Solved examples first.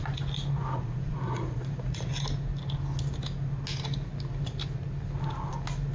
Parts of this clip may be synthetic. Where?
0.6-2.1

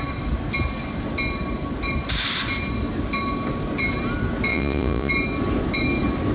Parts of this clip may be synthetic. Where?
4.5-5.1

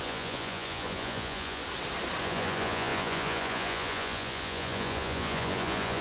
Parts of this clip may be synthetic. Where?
0.0-1.6; 2.2-6.0

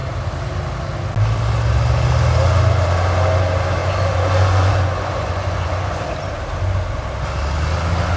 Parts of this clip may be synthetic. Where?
3.8-6.0

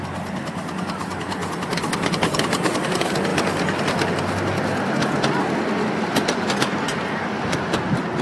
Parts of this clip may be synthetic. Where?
none

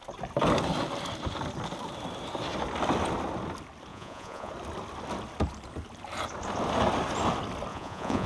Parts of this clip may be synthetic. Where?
3.9-4.5; 7.7-8.3